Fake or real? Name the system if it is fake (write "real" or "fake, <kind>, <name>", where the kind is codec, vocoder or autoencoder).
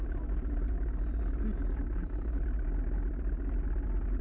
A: real